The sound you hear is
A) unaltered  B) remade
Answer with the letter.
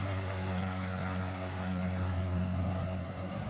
B